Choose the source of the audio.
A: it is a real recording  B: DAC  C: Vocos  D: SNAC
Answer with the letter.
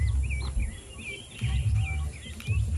A